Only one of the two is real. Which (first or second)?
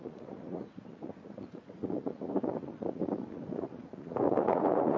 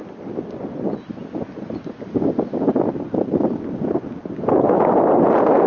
second